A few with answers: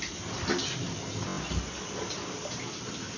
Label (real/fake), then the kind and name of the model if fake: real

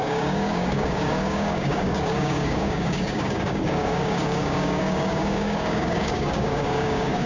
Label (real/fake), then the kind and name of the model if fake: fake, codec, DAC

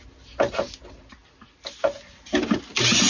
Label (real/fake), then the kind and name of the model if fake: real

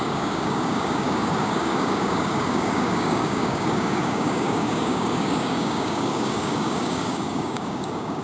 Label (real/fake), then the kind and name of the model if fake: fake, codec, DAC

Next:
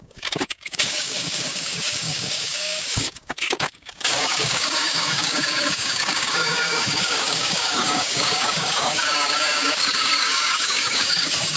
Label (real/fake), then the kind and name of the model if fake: fake, codec, DAC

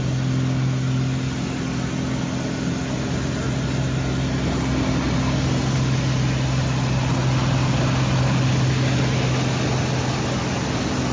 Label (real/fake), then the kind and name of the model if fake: real